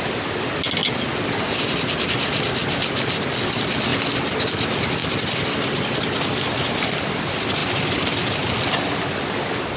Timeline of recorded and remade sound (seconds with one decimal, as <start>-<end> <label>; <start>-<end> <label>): 0.0-9.8 recorded